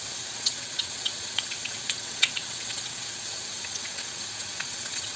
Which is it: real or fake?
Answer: fake